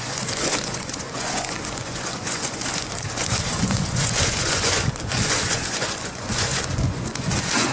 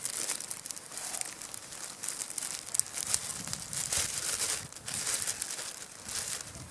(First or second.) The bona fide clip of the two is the second